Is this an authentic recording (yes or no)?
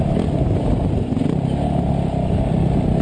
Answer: yes